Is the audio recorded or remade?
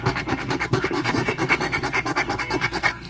remade